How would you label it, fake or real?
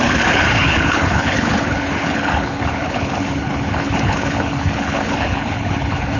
fake